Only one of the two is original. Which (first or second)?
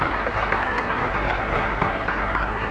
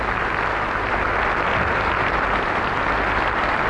second